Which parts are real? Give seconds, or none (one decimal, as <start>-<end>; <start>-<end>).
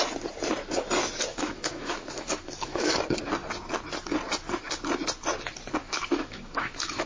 0.0-1.3; 2.9-5.8